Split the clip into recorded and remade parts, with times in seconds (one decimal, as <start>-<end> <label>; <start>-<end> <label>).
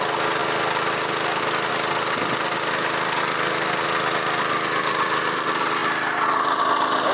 0.0-7.1 recorded